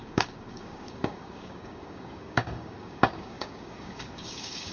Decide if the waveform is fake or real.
fake